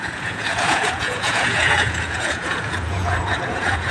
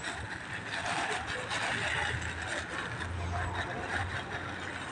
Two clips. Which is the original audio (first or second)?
second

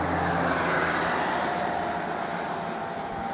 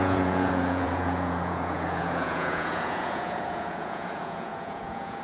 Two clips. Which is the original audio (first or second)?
first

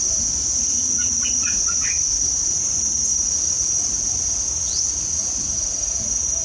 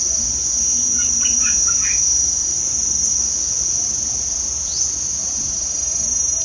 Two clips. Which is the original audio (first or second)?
second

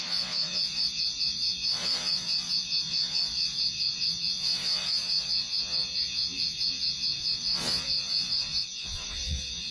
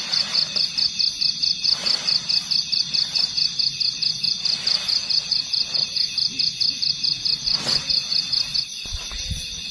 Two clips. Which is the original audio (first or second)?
second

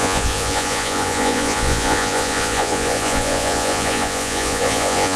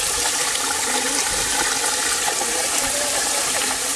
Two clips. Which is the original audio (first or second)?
second